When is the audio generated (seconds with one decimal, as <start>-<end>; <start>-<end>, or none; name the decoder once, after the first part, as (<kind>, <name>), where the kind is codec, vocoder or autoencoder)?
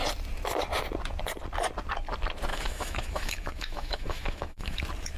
2.5-4.8 (autoencoder, DAC-VAE)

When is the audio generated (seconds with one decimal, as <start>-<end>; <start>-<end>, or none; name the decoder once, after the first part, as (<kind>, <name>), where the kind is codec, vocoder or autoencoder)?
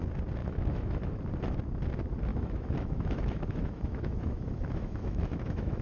0.4-1.2 (autoencoder, DAC-VAE); 2.3-5.8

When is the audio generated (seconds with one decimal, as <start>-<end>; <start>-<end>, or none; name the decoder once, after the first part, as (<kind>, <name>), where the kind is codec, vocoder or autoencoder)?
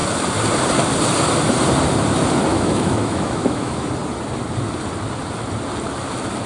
2.5-3.9 (autoencoder, DAC-VAE)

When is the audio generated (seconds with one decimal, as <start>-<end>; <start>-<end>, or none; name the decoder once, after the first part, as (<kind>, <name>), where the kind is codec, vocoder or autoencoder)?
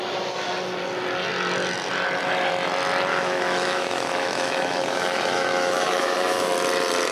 3.1-6.5 (autoencoder, DAC-VAE)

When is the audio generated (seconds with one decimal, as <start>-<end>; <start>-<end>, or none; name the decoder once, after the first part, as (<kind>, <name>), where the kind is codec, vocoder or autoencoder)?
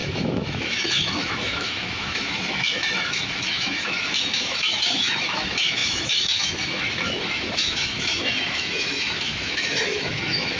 0.0-10.6 (autoencoder, DAC-VAE)